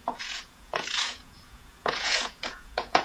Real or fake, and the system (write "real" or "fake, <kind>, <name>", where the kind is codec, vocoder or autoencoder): fake, vocoder, Vocos